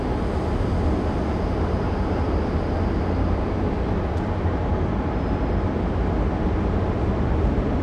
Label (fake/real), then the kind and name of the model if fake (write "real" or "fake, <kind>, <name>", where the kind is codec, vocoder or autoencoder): real